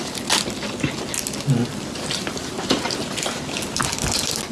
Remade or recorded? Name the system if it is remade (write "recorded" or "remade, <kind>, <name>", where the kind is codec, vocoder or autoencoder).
recorded